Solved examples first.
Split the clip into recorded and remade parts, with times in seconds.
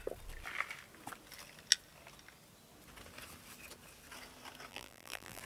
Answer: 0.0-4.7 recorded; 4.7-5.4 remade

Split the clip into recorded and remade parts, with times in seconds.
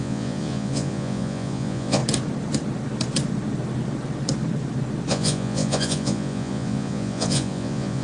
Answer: 0.0-2.0 remade; 2.0-5.1 recorded; 5.1-8.0 remade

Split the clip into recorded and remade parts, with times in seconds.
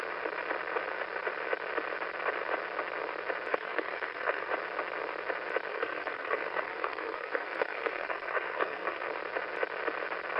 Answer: 0.0-3.5 recorded; 3.5-4.5 remade; 4.5-5.7 recorded; 5.7-9.1 remade; 9.1-10.4 recorded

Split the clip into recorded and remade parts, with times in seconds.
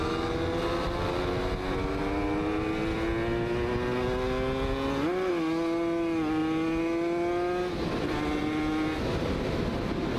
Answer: 0.0-10.2 recorded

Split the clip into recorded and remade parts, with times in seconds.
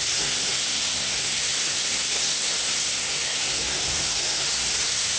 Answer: 0.0-5.2 remade